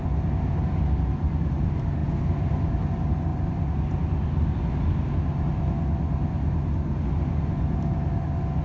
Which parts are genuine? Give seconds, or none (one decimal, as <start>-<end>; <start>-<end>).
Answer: 0.0-3.3; 5.1-8.6